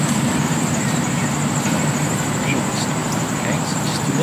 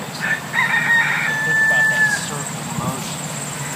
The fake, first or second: first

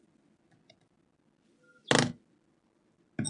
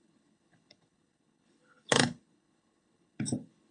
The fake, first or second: second